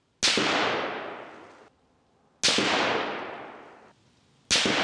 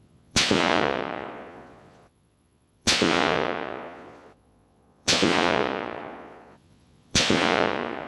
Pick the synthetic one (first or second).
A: second